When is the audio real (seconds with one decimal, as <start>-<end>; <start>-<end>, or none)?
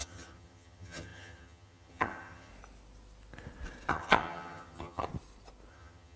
2.5-3.9; 5.1-5.7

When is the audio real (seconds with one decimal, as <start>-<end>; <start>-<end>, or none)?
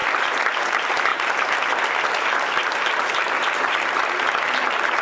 0.6-5.0